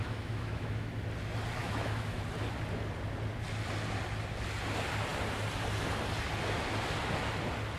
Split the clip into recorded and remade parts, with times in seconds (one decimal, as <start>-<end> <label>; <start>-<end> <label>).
0.0-1.0 remade; 1.0-1.6 recorded; 1.6-2.2 remade; 2.2-7.8 recorded

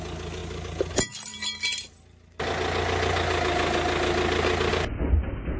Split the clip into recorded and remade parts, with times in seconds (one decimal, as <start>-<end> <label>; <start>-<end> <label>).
0.0-5.6 recorded

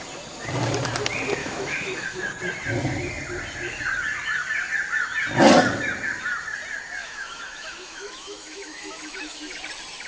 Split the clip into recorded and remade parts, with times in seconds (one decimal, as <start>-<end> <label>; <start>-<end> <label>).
0.0-1.4 recorded; 1.4-2.2 remade; 2.2-7.0 recorded; 7.0-9.6 remade; 9.6-10.1 recorded

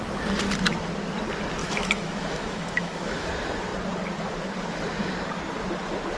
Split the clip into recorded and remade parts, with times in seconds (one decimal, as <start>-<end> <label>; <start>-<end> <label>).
0.0-1.6 recorded; 1.6-3.3 remade; 3.3-6.2 recorded